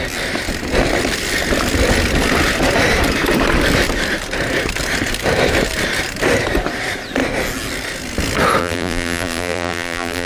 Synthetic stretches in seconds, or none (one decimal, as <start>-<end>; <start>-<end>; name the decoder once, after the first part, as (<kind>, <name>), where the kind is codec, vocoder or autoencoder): 8.6-10.3 (vocoder, BigVGAN v2)